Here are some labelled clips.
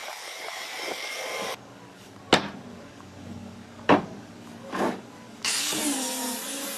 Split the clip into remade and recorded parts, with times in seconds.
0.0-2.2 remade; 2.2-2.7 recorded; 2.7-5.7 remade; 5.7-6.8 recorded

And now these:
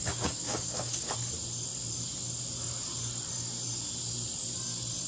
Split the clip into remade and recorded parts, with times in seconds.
0.0-1.1 remade; 1.1-5.1 recorded

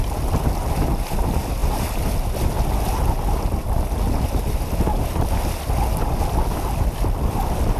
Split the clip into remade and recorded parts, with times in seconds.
0.0-7.8 recorded

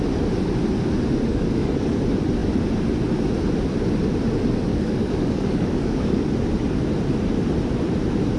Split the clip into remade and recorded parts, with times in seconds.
0.0-1.3 recorded; 1.3-2.0 remade; 2.0-4.7 recorded; 4.7-6.2 remade; 6.2-8.4 recorded